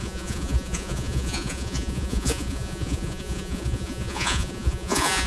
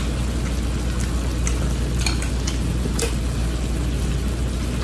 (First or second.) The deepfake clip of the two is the first